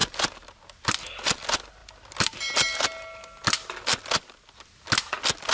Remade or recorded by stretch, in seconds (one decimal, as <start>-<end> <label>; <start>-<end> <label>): 0.0-5.5 recorded